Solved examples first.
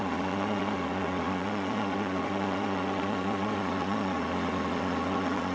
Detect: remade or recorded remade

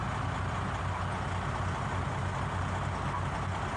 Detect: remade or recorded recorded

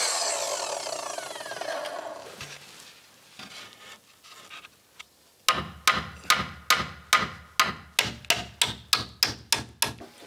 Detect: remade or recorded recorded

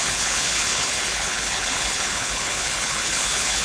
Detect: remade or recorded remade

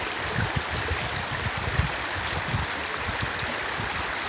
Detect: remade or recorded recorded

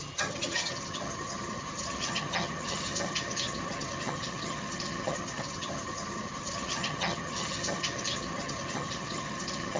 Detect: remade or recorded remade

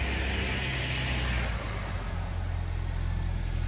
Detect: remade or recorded recorded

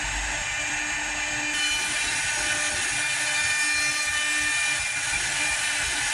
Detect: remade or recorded recorded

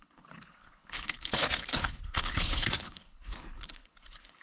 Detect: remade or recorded remade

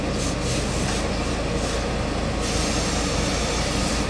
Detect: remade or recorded recorded